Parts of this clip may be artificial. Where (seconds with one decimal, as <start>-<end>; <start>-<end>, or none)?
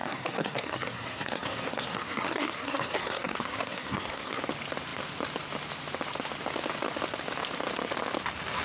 0.0-4.4